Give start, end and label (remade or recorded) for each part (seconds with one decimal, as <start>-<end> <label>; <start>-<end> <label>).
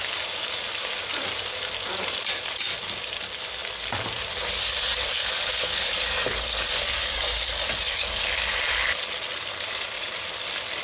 0.0-5.2 recorded; 5.2-5.9 remade; 5.9-7.0 recorded; 7.0-7.7 remade; 7.7-10.8 recorded